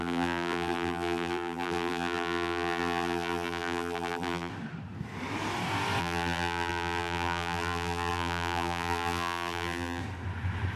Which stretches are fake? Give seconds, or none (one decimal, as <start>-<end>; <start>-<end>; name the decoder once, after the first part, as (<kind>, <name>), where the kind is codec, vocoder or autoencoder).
0.0-4.5 (vocoder, BigVGAN v2); 6.0-10.0